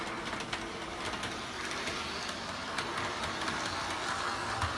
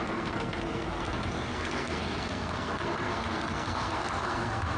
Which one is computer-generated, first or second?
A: second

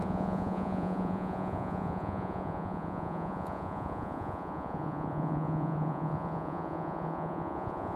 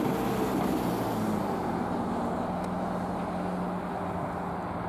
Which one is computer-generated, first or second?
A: first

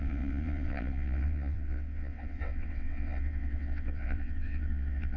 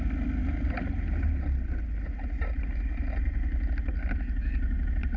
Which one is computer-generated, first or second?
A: first